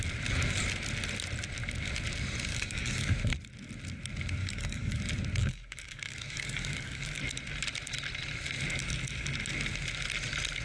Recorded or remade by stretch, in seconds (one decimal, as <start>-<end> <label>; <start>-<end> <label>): 0.0-2.5 recorded; 2.5-3.1 remade; 3.1-4.4 recorded; 4.4-5.0 remade; 5.0-5.4 recorded; 5.4-7.2 remade; 7.2-10.6 recorded